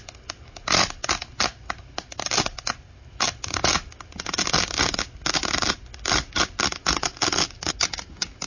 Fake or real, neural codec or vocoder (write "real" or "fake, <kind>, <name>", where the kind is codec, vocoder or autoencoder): real